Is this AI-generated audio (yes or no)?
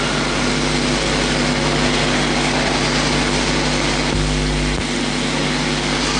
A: no